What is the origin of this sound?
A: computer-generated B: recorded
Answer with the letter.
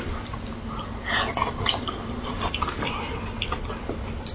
B